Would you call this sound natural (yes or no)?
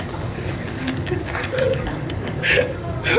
no